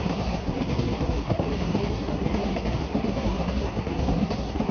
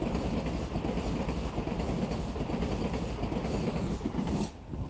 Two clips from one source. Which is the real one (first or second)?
second